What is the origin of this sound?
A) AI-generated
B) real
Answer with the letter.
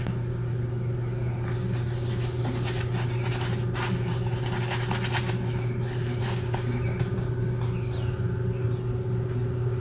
B